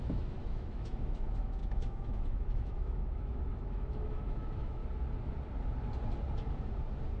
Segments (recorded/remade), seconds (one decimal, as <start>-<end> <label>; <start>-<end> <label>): 0.0-4.8 remade; 4.8-7.2 recorded